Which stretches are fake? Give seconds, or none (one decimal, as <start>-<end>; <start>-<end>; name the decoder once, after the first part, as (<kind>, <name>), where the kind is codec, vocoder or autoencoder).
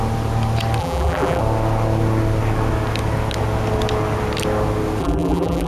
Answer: 0.8-1.4 (vocoder, BigVGAN v2); 5.0-5.7